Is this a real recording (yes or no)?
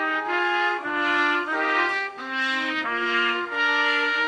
no